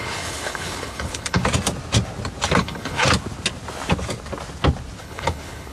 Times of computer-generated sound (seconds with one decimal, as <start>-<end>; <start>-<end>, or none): 0.0-1.4; 2.6-3.0; 5.0-5.7